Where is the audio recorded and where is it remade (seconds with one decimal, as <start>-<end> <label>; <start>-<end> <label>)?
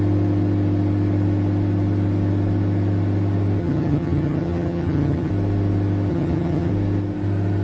0.0-3.6 recorded; 3.6-5.3 remade; 5.3-6.1 recorded; 6.1-6.7 remade; 6.7-7.6 recorded